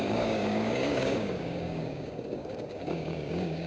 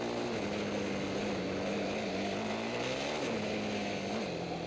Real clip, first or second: second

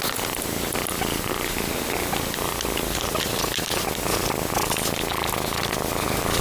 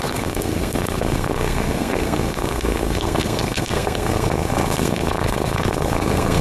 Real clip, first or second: first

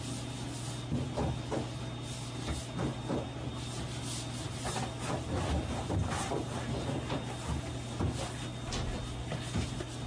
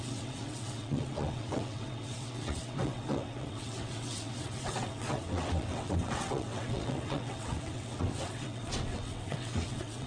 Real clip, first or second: first